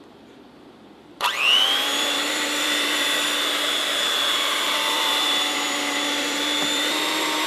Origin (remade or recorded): remade